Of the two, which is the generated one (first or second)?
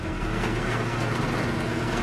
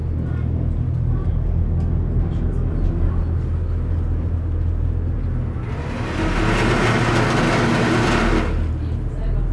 first